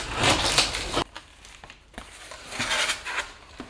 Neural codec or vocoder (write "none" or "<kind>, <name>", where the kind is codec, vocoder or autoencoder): none